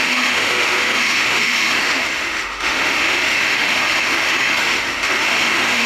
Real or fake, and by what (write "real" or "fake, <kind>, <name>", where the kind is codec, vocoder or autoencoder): fake, autoencoder, DAC-VAE